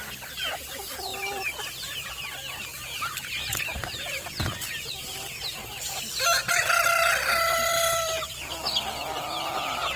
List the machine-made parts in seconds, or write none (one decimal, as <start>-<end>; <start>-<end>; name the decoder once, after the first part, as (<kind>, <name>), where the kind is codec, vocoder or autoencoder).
1.1-2.1 (vocoder, BigVGAN v2); 2.7-5.8; 7.7-8.5